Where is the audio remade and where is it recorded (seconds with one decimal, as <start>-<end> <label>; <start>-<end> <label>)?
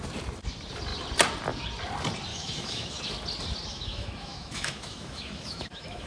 0.0-2.3 recorded; 2.3-3.0 remade; 3.0-3.7 recorded; 3.7-6.1 remade